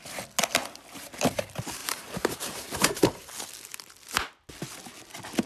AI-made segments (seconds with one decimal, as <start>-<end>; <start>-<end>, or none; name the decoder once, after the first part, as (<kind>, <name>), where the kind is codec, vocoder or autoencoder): 1.8-3.3 (vocoder, BigVGAN v2)